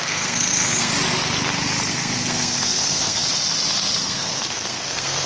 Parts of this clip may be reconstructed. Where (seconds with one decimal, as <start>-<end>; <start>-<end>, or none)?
0.0-0.9; 1.9-3.2; 4.0-5.3